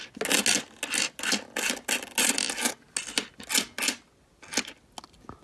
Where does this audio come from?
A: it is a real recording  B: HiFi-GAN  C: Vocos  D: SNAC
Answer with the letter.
A